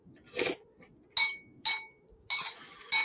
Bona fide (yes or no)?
yes